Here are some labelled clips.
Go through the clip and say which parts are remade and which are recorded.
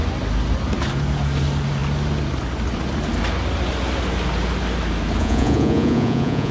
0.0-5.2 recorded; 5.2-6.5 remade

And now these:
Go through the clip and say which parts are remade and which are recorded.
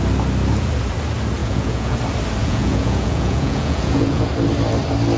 0.0-1.4 recorded; 1.4-2.0 remade; 2.0-2.4 recorded; 2.4-4.3 remade; 4.3-5.2 recorded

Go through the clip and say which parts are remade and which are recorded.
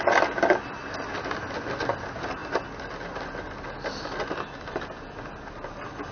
0.0-6.1 recorded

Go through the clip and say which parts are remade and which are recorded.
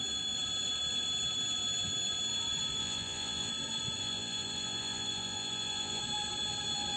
0.0-2.8 recorded; 2.8-3.5 remade; 3.5-4.0 recorded; 4.0-6.0 remade; 6.0-7.0 recorded